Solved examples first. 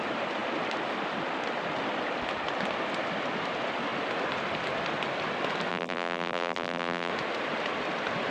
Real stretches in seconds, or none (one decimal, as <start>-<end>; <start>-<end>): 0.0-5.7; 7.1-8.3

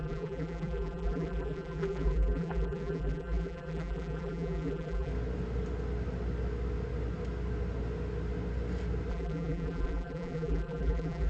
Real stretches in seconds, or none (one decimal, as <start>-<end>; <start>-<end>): 5.1-9.1

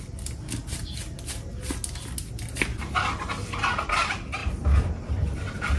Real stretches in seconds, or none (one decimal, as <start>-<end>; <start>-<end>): 0.0-4.4; 4.9-5.8

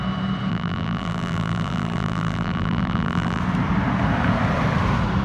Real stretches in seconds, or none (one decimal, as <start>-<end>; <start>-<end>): 0.0-0.5; 3.4-5.2

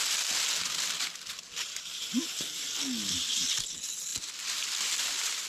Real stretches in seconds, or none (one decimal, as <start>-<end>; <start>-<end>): 0.0-5.5

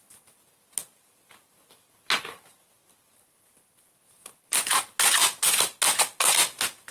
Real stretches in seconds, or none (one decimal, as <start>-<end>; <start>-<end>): 0.0-0.8; 4.8-6.9